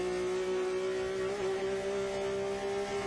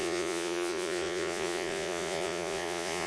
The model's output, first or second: second